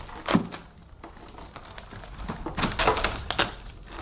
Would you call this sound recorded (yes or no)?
yes